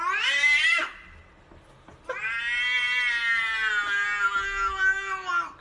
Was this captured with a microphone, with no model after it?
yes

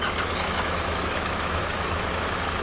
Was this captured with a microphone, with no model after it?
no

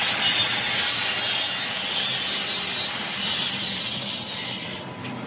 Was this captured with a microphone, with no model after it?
yes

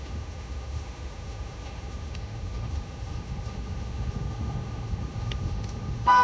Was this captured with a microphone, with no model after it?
no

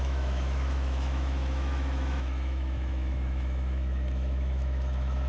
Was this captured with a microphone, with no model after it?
no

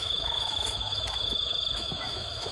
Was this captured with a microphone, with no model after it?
no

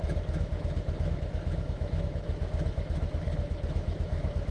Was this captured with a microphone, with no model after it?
no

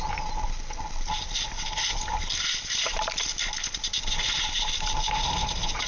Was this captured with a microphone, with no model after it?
yes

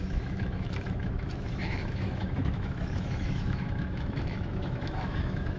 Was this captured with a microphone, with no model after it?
no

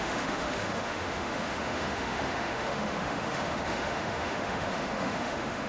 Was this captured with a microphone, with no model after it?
no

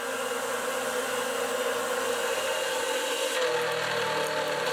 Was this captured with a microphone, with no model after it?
yes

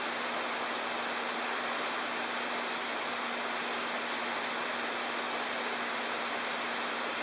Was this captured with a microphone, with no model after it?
yes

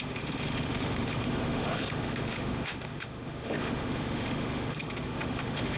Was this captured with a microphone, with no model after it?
no